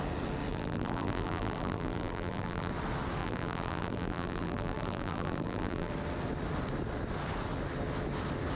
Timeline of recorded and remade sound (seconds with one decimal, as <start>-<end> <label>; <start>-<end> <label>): 0.0-0.5 recorded; 0.5-2.7 remade; 2.7-3.2 recorded; 3.2-5.9 remade; 5.9-8.5 recorded